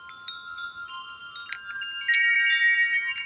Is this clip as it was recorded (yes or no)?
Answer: yes